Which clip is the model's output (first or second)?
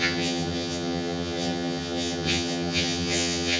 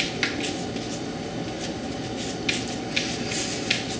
first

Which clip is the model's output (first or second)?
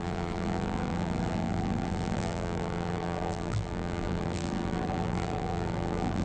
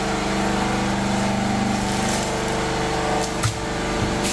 first